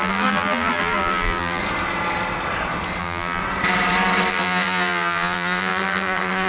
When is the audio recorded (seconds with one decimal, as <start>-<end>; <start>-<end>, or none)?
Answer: 1.6-3.0; 3.4-4.3